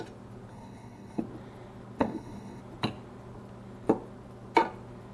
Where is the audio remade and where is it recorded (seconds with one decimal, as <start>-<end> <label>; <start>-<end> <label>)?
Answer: 0.0-0.5 recorded; 0.5-1.2 remade; 1.2-2.0 recorded; 2.0-2.6 remade; 2.6-5.1 recorded